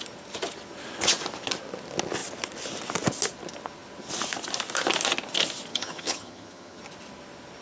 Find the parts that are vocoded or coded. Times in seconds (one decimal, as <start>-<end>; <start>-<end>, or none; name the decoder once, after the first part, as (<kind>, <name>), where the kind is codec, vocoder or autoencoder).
5.7-6.8 (vocoder, HiFi-GAN)